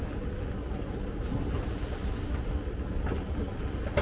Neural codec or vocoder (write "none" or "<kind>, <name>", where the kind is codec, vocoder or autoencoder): none